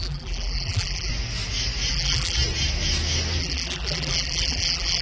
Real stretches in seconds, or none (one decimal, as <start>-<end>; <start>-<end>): 1.1-1.9; 2.4-3.4

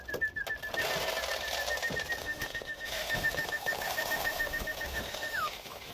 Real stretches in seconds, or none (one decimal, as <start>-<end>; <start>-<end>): 0.0-2.2

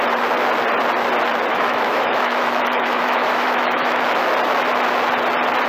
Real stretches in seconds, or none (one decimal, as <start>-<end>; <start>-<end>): 0.0-1.5; 4.1-5.7

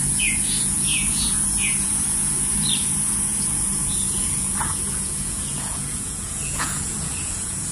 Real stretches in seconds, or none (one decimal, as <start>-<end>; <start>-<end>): none

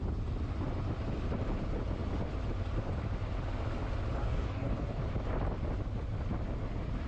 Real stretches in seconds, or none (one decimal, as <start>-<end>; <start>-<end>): 0.0-4.2; 5.0-7.1

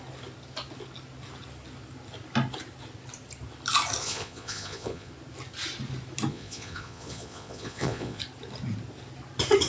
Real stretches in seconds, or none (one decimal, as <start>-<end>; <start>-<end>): 0.0-4.0; 5.1-6.3; 8.2-9.7